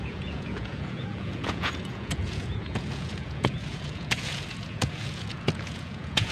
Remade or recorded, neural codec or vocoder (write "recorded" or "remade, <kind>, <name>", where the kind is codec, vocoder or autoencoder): remade, vocoder, Vocos